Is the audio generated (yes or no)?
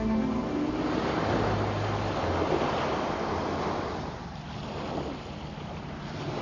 no